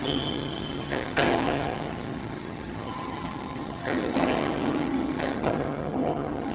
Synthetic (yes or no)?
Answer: yes